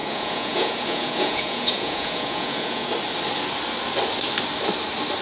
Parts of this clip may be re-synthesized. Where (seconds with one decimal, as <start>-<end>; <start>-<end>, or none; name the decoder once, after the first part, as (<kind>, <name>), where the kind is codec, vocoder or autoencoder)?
0.0-2.9 (vocoder, Vocos)